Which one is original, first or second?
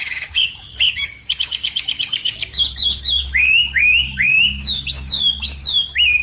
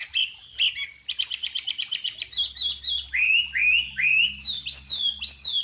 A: second